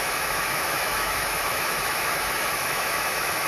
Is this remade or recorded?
remade